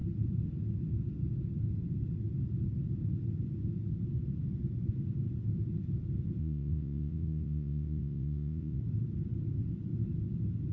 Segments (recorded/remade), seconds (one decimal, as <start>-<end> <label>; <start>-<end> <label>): 0.0-6.4 recorded; 6.4-8.8 remade; 8.8-10.7 recorded